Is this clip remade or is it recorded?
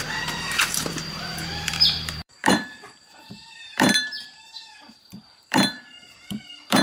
remade